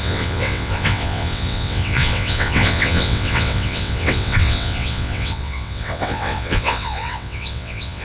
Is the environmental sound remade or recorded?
remade